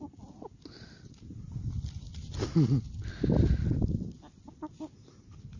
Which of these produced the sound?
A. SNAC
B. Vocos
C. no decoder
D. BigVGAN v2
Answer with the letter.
C